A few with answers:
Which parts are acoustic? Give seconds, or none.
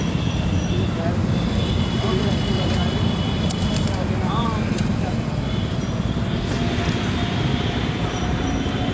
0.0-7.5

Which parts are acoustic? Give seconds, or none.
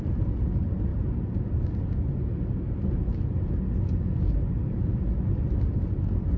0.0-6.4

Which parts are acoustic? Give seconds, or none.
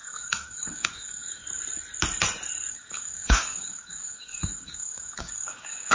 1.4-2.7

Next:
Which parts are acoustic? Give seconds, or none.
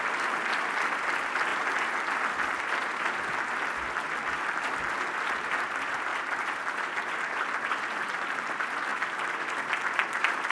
0.0-10.5